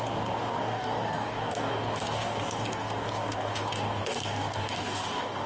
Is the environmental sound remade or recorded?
remade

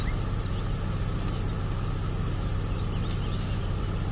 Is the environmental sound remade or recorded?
recorded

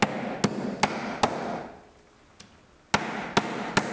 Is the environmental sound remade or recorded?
recorded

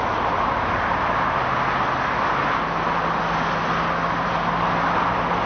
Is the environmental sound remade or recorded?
recorded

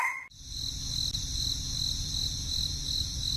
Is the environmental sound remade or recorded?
recorded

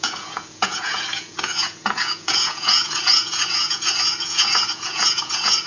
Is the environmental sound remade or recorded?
remade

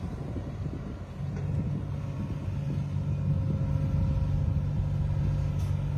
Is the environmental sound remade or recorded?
recorded